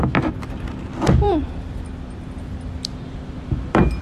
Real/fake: fake